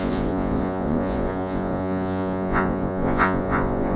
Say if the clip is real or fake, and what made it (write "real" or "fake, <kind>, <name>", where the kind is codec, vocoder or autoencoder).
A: fake, vocoder, Vocos